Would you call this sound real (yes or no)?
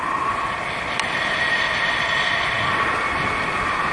yes